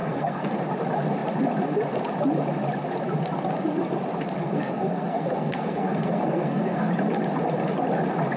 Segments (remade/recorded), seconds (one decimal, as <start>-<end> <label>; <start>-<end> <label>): 0.0-0.5 remade; 0.5-4.4 recorded; 4.4-6.9 remade; 6.9-8.4 recorded